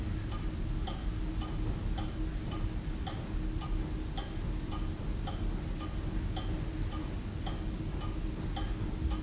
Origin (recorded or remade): recorded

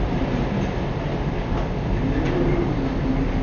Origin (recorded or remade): recorded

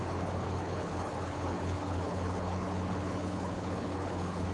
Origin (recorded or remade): remade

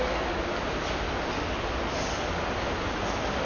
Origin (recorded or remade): recorded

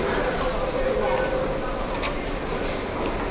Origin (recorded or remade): recorded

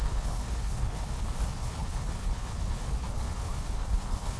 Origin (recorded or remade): remade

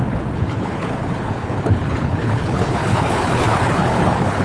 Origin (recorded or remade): remade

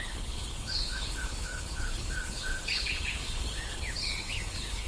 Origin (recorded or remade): remade